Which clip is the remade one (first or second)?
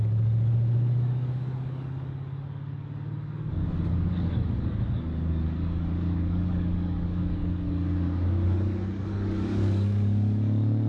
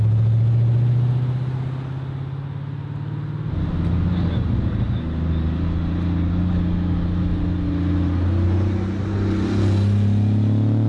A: first